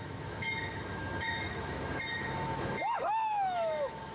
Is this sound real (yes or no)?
no